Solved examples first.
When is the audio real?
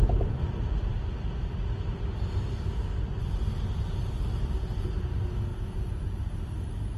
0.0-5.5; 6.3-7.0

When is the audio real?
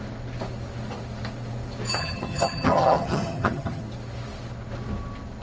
0.0-2.0; 3.8-5.4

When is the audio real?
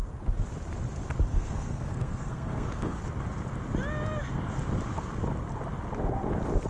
0.0-1.3; 3.0-6.7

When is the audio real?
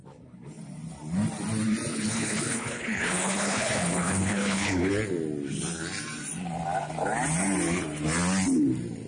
0.0-1.9; 4.9-9.1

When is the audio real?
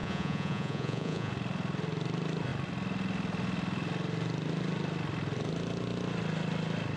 1.3-7.0